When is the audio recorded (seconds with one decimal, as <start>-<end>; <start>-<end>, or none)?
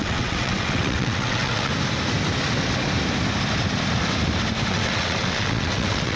1.7-4.7